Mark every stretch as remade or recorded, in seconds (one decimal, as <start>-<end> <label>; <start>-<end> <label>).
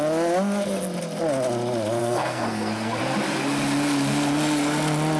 0.0-2.0 recorded; 2.0-3.0 remade; 3.0-5.2 recorded